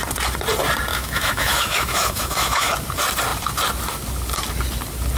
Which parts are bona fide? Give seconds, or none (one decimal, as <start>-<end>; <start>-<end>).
0.0-0.9; 2.7-5.2